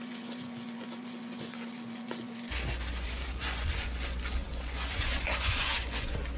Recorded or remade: remade